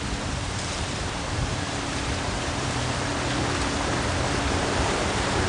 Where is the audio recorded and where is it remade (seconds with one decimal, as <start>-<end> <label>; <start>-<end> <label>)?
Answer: 0.0-3.1 remade; 3.1-4.8 recorded; 4.8-5.5 remade